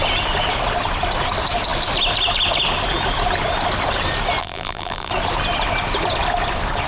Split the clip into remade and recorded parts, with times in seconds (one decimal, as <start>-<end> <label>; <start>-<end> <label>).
0.0-4.4 recorded; 4.4-5.1 remade; 5.1-6.9 recorded